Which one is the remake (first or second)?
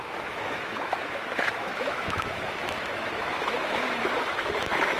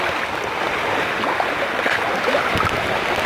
first